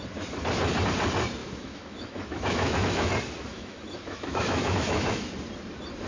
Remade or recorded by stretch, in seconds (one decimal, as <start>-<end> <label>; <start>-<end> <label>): 0.0-1.4 recorded; 1.4-3.1 remade; 3.1-3.5 recorded; 3.5-5.3 remade; 5.3-6.1 recorded